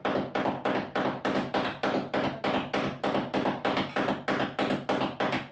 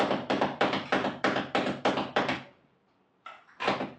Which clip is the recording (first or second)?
first